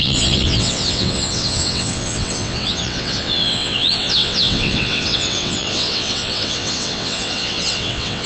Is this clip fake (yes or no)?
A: yes